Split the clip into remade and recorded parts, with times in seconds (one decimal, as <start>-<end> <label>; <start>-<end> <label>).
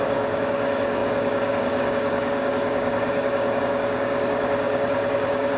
0.0-5.6 remade